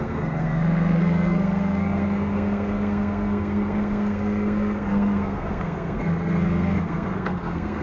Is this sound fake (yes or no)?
yes